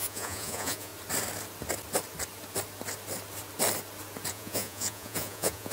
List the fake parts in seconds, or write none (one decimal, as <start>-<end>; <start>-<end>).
0.0-0.9; 4.3-5.7